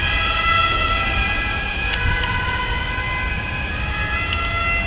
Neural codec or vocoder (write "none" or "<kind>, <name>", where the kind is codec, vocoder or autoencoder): none